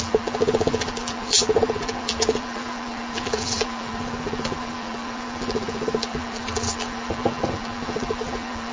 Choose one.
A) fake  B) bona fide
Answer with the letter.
A